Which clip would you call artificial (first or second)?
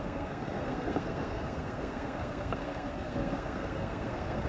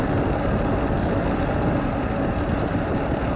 first